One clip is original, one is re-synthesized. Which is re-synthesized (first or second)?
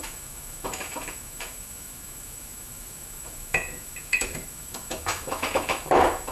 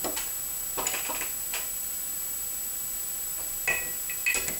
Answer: first